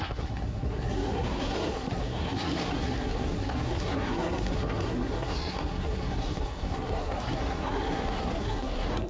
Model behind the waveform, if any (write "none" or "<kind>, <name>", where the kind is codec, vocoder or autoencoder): codec, SNAC